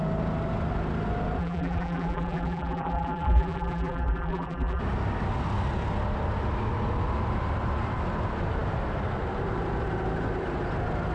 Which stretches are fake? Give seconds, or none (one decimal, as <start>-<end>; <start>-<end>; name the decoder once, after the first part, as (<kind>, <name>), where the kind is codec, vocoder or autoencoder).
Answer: 1.4-4.8 (vocoder, BigVGAN v2)